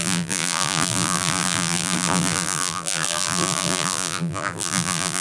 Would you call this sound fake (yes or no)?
yes